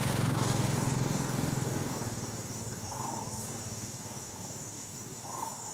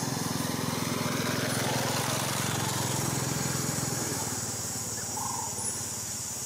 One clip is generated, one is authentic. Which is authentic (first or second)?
second